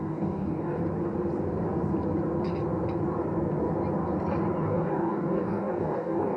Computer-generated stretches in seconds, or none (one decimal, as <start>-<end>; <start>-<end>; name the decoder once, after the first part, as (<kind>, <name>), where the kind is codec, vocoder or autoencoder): 0.0-0.8 (codec, DAC); 4.6-6.4